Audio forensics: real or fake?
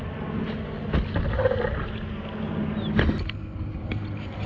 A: real